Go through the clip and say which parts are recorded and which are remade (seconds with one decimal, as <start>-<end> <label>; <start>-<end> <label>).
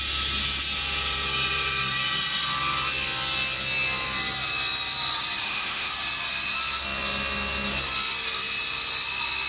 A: 0.0-5.4 recorded; 5.4-5.9 remade; 5.9-9.5 recorded